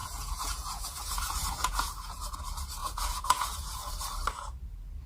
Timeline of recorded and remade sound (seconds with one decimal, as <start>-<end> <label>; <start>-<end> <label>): 0.0-2.4 remade; 2.4-2.8 recorded; 2.8-3.9 remade; 3.9-5.1 recorded